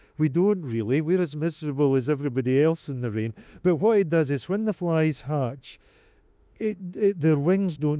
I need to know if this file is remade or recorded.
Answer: remade